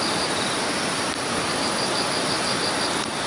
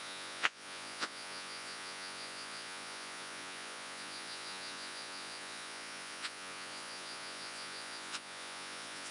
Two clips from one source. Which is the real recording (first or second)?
first